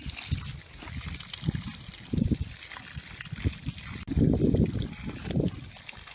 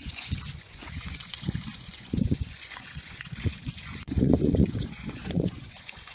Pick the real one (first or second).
first